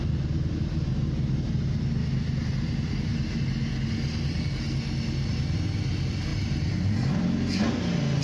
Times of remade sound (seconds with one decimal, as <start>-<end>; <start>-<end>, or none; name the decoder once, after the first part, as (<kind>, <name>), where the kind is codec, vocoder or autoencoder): none